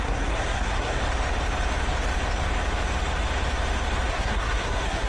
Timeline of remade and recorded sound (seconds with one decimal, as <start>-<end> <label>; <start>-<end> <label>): 0.0-1.0 remade; 1.0-4.1 recorded; 4.1-5.1 remade